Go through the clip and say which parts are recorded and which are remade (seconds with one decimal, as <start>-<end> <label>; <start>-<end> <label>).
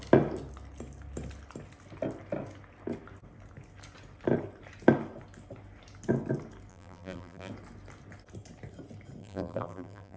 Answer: 0.0-6.7 recorded; 6.7-7.5 remade; 7.5-9.2 recorded; 9.2-10.2 remade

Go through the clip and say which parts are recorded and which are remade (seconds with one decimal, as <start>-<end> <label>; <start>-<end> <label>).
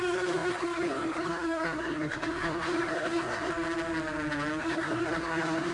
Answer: 0.0-3.5 remade; 3.5-4.6 recorded; 4.6-5.7 remade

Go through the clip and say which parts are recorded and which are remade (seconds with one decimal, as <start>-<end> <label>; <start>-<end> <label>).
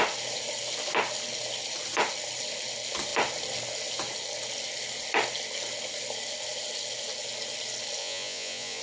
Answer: 0.0-8.0 recorded; 8.0-8.8 remade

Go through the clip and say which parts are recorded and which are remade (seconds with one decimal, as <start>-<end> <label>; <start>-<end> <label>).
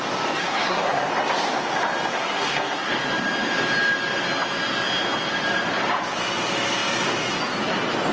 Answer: 0.0-0.4 recorded; 0.4-1.1 remade; 1.1-2.1 recorded; 2.1-2.9 remade; 2.9-8.1 recorded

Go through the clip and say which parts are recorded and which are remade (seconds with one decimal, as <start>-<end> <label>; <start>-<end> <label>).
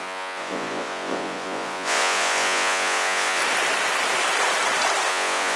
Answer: 0.0-3.4 remade; 3.4-5.1 recorded; 5.1-5.6 remade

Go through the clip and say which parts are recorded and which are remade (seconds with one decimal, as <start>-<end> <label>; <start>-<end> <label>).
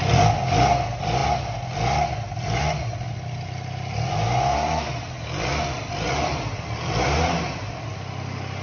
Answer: 0.0-8.6 recorded